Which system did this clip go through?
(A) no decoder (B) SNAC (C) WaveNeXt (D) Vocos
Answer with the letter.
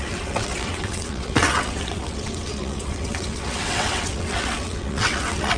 C